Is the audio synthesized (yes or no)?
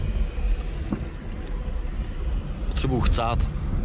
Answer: no